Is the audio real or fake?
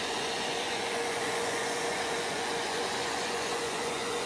fake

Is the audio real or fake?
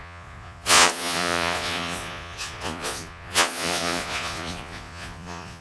fake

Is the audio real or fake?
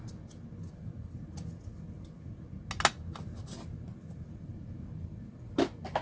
real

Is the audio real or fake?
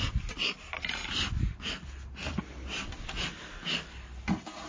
real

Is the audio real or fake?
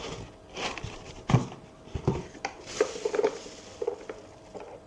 real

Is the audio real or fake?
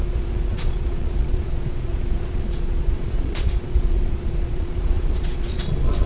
fake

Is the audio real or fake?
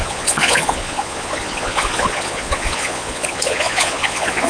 fake